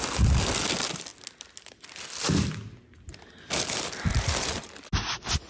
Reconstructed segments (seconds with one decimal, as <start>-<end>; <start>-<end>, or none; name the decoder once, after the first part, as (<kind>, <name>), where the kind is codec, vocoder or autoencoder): none